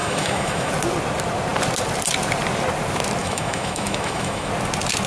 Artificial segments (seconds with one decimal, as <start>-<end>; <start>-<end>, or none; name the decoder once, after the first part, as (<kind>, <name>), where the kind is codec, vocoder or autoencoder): 0.0-0.7 (autoencoder, DAC-VAE); 3.2-4.5